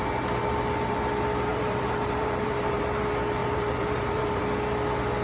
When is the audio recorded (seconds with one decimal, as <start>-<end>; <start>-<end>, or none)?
0.0-1.5; 2.8-3.4; 4.4-5.2